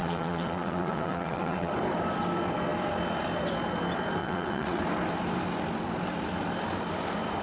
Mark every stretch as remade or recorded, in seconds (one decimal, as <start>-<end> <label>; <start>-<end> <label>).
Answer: 0.0-1.7 remade; 1.7-4.2 recorded; 4.2-4.8 remade; 4.8-7.4 recorded